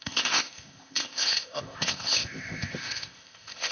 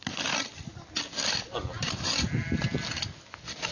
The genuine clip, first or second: second